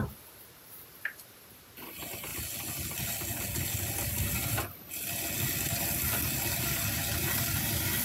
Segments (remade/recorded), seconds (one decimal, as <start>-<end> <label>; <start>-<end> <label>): 0.0-8.0 recorded